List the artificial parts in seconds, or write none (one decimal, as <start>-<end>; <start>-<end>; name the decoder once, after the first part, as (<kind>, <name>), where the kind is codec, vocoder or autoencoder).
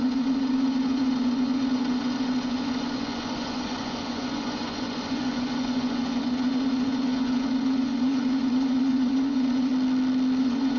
0.0-9.7 (vocoder, Vocos); 10.4-10.8